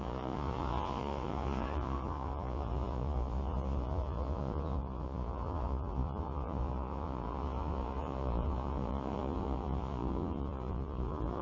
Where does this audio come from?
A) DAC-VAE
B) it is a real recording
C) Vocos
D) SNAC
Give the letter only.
C